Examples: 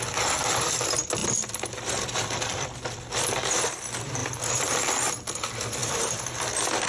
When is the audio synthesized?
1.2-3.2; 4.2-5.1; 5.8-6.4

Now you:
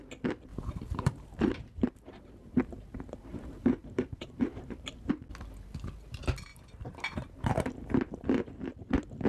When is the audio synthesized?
0.5-5.1; 6.5-8.7